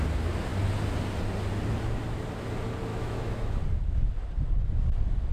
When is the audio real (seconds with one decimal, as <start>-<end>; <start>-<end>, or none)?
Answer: 0.0-2.9; 3.6-5.3